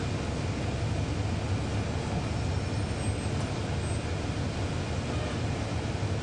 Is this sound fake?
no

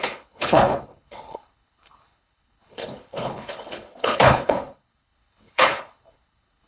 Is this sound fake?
yes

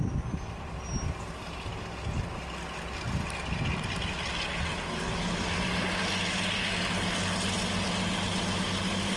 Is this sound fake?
no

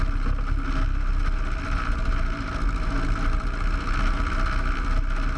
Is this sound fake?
no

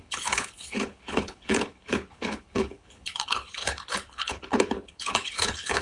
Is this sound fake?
yes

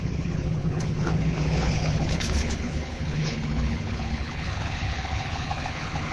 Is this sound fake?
yes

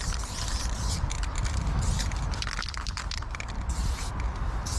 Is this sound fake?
no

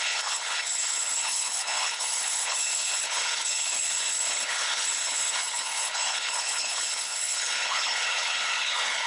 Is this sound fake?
yes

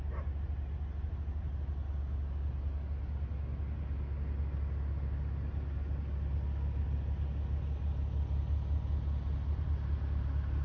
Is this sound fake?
no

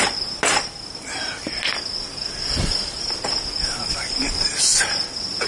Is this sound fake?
no